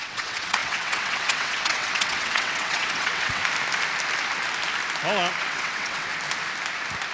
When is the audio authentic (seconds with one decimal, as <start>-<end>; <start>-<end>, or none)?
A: 3.4-5.4; 6.1-7.1